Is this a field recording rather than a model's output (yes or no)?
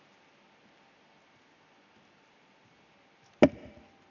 yes